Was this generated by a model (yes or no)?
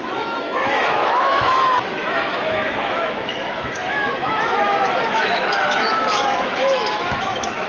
yes